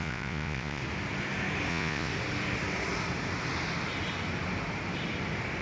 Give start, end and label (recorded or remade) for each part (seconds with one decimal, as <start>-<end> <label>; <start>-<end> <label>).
0.0-0.8 remade; 0.8-1.7 recorded; 1.7-2.1 remade; 2.1-5.6 recorded